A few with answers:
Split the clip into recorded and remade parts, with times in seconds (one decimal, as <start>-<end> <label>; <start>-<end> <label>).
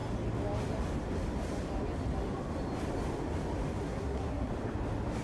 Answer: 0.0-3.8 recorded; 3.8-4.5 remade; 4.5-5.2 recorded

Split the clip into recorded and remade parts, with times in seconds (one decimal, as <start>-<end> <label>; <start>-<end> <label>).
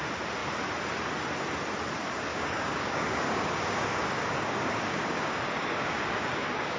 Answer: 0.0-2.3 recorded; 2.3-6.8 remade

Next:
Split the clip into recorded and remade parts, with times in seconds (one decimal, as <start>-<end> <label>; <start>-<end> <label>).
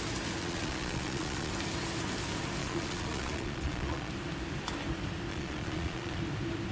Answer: 0.0-0.4 recorded; 0.4-1.5 remade; 1.5-2.6 recorded; 2.6-4.1 remade; 4.1-5.3 recorded; 5.3-6.2 remade; 6.2-6.7 recorded